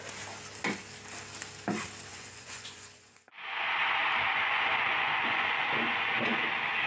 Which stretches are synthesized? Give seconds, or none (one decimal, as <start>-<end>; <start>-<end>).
2.1-3.7; 4.3-6.4

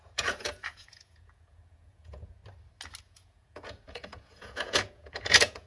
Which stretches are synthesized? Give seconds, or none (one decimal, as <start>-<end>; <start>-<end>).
0.0-2.4; 3.0-5.7

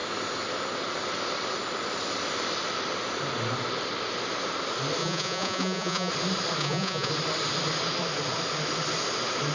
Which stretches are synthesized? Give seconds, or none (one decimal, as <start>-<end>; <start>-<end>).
5.0-6.1; 6.6-7.1

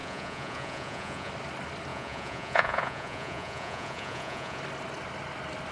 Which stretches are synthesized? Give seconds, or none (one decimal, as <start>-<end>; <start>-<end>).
0.0-1.3; 1.9-4.6

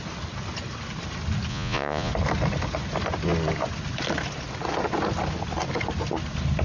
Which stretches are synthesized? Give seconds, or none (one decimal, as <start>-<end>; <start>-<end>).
1.5-2.1